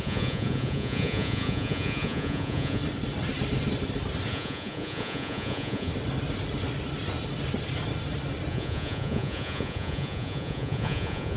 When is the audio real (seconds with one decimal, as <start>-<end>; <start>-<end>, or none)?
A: 2.8-4.3; 5.9-8.5